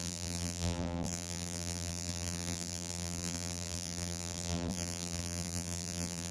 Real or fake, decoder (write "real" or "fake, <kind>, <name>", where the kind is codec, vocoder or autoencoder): fake, vocoder, BigVGAN v2